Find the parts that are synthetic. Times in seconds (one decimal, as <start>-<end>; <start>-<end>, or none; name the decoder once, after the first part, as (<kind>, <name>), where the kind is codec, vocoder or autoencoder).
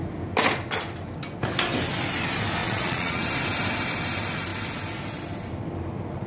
2.6-3.2 (vocoder, Vocos)